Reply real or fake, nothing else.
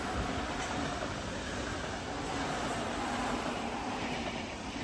real